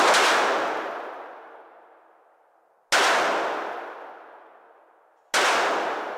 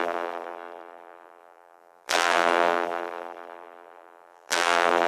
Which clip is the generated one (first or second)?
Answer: second